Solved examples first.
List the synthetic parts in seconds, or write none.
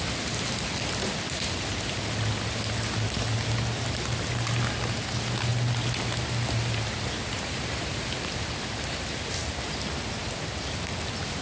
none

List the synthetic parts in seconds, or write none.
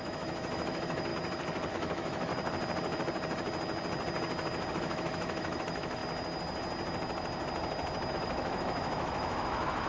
0.0-1.1 (autoencoder, DAC-VAE); 1.7-2.3; 4.7-6.0; 8.1-9.9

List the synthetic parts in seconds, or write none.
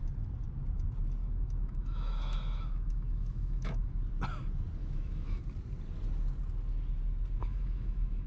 1.2-4.0 (autoencoder, DAC-VAE); 4.8-5.4; 7.4-8.3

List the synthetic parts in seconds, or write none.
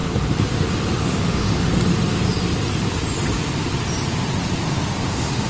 1.0-1.7 (autoencoder, DAC-VAE); 5.0-5.5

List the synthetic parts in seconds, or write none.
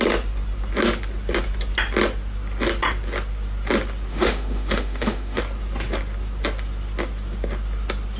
4.1-5.4 (autoencoder, DAC-VAE)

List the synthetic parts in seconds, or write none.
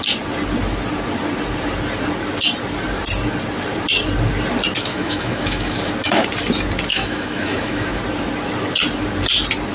4.9-5.7 (autoencoder, DAC-VAE); 6.9-8.0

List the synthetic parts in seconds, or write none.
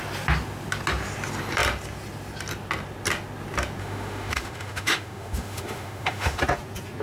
3.8-6.4 (autoencoder, DAC-VAE)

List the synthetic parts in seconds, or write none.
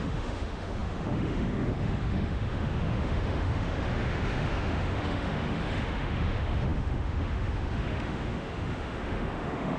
0.0-9.8 (autoencoder, DAC-VAE)